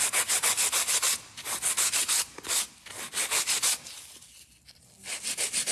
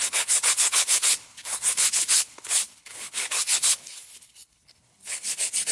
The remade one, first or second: second